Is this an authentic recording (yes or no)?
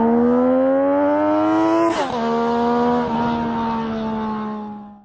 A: yes